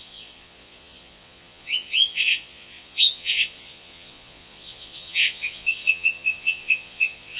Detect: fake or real fake